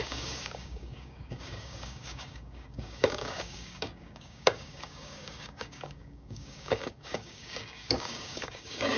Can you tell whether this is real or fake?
fake